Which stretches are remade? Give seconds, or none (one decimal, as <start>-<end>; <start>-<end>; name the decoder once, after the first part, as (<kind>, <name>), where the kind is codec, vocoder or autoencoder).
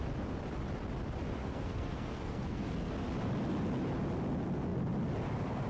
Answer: 1.4-2.9 (codec, SNAC)